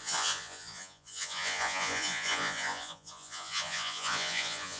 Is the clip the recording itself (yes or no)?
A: no